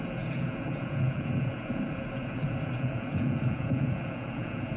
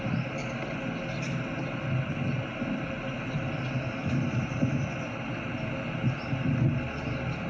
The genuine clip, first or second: second